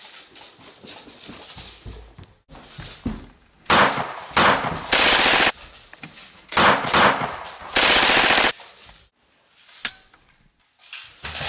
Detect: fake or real real